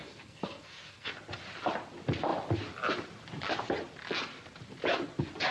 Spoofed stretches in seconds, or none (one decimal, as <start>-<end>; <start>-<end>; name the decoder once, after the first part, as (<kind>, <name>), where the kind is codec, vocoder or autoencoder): 0.0-1.1 (codec, SNAC)